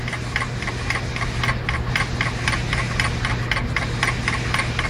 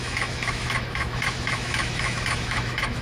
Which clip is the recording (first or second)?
first